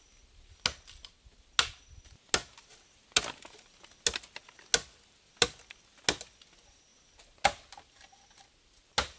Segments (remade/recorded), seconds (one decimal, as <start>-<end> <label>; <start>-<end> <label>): 0.0-9.2 recorded